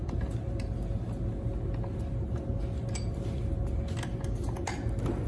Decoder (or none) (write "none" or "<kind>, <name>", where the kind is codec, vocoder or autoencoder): none